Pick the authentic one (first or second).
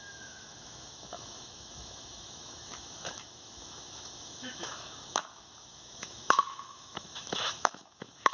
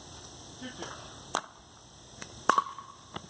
second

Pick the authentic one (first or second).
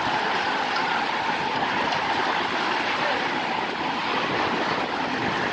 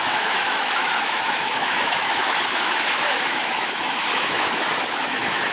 first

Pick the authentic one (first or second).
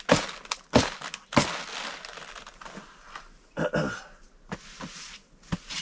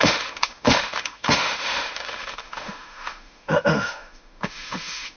first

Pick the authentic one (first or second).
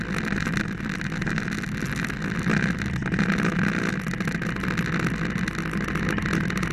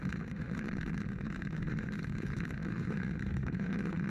first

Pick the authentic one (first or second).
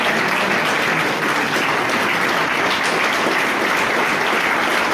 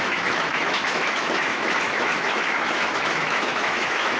first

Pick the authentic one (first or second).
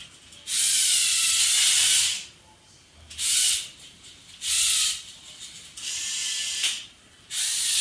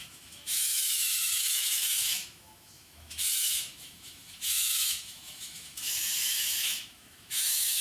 first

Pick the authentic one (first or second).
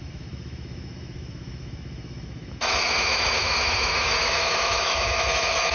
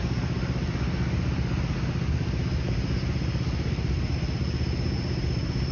second